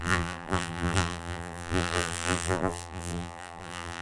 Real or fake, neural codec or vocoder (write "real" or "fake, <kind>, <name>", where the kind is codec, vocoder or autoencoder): fake, vocoder, BigVGAN v2